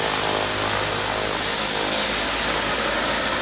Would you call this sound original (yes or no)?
yes